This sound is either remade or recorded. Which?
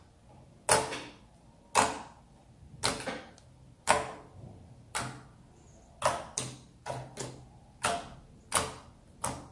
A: recorded